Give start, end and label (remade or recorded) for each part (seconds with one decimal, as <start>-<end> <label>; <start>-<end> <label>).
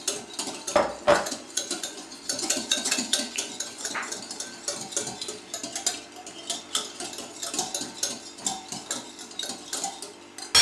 0.0-1.1 recorded; 1.1-4.2 remade; 4.2-10.6 recorded